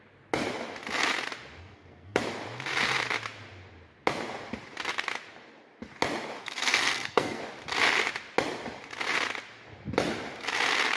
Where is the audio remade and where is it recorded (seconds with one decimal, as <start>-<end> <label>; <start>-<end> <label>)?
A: 0.0-1.6 recorded; 1.6-2.2 remade; 2.2-6.4 recorded; 6.4-7.4 remade; 7.4-11.0 recorded